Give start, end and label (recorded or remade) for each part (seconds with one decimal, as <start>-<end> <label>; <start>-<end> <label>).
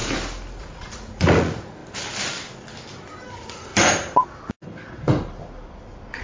0.0-0.6 recorded; 0.6-1.8 remade; 1.8-3.3 recorded; 3.3-3.7 remade; 3.7-6.2 recorded